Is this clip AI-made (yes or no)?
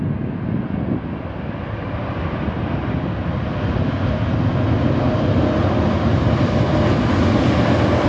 no